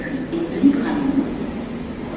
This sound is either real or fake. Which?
real